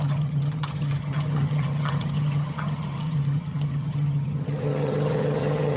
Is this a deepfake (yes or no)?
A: yes